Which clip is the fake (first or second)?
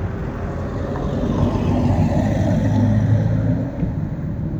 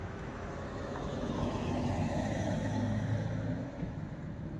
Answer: second